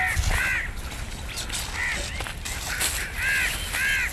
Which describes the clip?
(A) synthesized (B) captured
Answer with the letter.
B